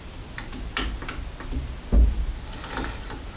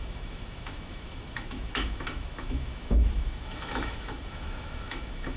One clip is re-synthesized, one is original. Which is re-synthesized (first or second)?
second